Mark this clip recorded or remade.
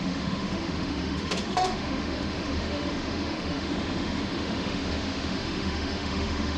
remade